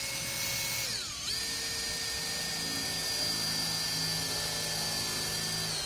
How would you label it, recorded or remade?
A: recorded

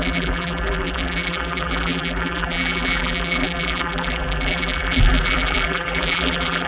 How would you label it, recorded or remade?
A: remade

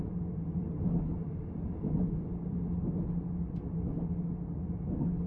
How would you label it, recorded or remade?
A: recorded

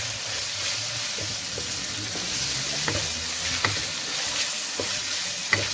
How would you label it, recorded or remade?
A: recorded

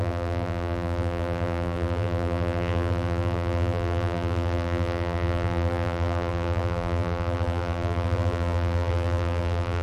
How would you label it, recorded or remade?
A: remade